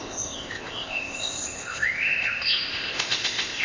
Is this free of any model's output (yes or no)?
no